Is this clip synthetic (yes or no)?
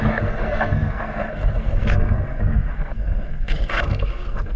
yes